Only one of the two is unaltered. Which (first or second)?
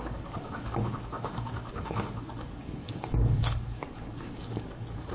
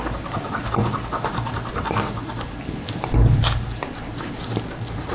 second